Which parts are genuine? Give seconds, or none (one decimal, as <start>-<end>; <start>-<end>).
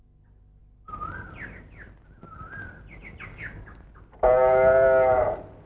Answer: 0.0-3.3; 3.8-5.7